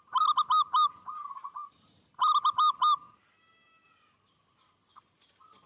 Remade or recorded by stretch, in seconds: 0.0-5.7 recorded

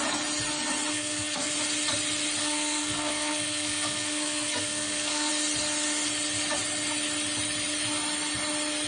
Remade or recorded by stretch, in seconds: 0.0-0.9 recorded; 0.9-1.5 remade; 1.5-2.4 recorded; 2.4-5.3 remade; 5.3-8.9 recorded

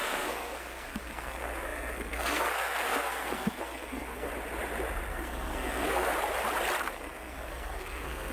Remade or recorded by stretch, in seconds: 0.0-4.3 remade; 4.3-5.1 recorded; 5.1-6.1 remade; 6.1-6.8 recorded; 6.8-8.3 remade

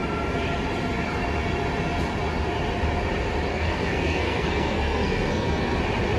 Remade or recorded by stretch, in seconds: 0.0-3.5 recorded; 3.5-5.8 remade; 5.8-6.2 recorded

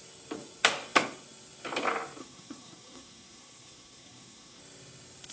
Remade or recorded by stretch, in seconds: 0.0-2.2 recorded; 2.2-4.6 remade; 4.6-5.3 recorded

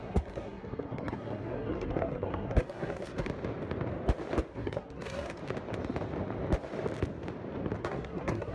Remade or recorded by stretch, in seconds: 0.0-3.3 remade; 3.3-4.5 recorded; 4.5-5.4 remade; 5.4-7.8 recorded; 7.8-8.5 remade

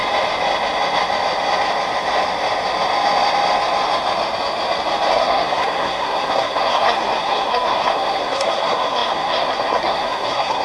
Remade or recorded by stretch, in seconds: 0.0-5.1 recorded; 5.1-10.6 remade

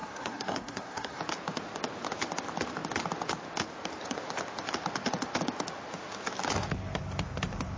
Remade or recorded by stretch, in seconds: 0.0-1.2 remade; 1.2-7.8 recorded